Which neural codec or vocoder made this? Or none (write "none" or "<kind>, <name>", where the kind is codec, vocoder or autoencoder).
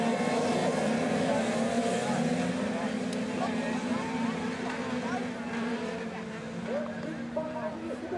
none